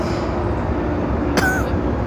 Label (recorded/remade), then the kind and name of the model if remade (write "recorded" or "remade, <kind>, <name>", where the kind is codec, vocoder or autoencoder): recorded